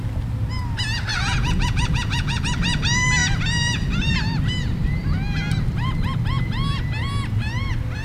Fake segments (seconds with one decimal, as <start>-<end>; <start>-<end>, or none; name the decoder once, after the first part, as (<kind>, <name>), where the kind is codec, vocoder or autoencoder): 1.1-2.4 (vocoder, Vocos)